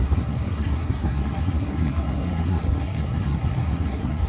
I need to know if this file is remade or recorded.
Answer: remade